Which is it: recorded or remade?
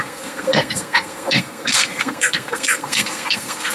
remade